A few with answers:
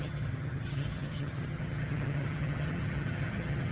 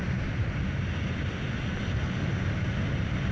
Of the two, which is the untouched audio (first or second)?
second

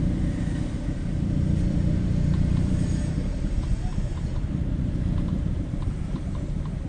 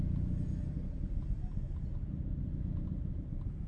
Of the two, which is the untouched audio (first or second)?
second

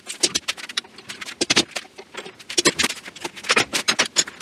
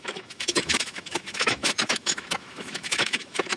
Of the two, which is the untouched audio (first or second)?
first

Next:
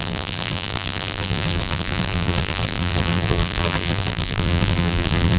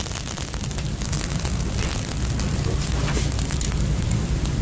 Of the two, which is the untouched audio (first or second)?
second